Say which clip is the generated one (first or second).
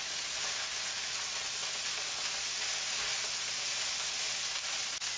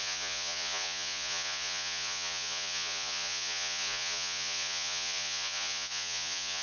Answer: second